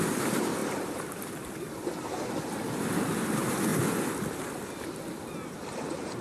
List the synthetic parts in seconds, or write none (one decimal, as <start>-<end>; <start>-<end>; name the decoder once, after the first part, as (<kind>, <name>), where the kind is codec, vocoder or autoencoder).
none